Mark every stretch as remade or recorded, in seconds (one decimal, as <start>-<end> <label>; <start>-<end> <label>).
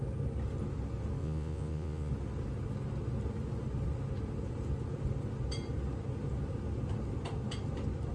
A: 0.0-1.2 recorded; 1.2-2.1 remade; 2.1-8.1 recorded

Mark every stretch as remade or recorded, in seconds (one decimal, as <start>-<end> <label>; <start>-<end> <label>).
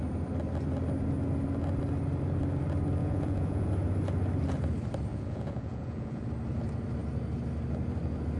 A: 0.0-3.0 recorded; 3.0-3.7 remade; 3.7-5.1 recorded; 5.1-6.3 remade; 6.3-8.4 recorded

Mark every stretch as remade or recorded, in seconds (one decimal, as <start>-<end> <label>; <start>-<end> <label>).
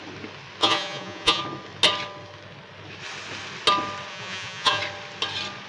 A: 0.0-0.6 recorded; 0.6-1.4 remade; 1.4-4.1 recorded; 4.1-4.8 remade; 4.8-5.7 recorded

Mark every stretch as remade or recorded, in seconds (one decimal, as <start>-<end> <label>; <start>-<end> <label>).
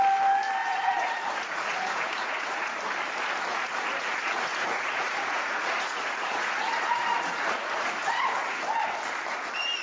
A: 0.0-0.6 recorded; 0.6-2.8 remade; 2.8-3.5 recorded; 3.5-8.6 remade; 8.6-9.8 recorded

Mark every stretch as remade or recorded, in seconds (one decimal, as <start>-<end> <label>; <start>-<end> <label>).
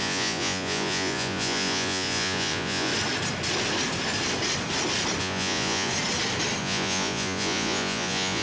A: 0.0-2.9 remade; 2.9-5.2 recorded; 5.2-5.9 remade; 5.9-6.6 recorded; 6.6-8.4 remade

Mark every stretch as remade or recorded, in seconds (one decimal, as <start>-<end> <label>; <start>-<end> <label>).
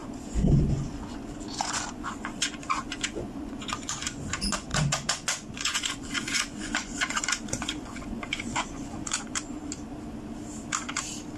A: 0.0-9.6 remade; 9.6-11.4 recorded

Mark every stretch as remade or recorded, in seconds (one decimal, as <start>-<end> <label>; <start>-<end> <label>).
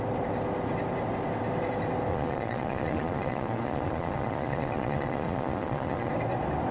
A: 0.0-2.1 recorded; 2.1-6.1 remade; 6.1-6.7 recorded